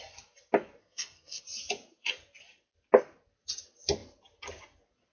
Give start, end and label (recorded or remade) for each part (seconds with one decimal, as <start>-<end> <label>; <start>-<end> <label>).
0.0-0.8 recorded; 0.8-1.4 remade; 1.4-5.1 recorded